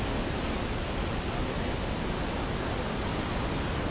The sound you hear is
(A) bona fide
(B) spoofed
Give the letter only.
A